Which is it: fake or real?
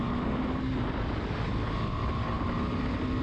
real